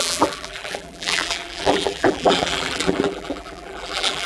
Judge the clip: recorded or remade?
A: remade